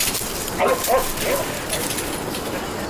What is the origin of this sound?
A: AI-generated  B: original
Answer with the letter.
B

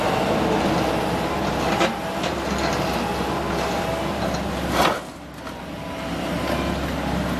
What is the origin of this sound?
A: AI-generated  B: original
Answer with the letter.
B